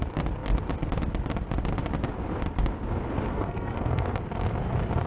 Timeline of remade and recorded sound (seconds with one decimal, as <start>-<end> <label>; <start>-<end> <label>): 0.0-3.3 recorded; 3.3-4.2 remade; 4.2-5.1 recorded